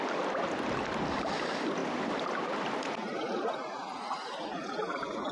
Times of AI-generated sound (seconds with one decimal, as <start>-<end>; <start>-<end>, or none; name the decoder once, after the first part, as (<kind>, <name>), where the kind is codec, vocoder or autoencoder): 1.8-5.3 (vocoder, BigVGAN v2)